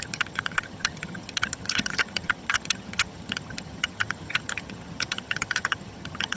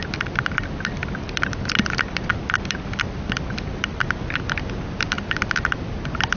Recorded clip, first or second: second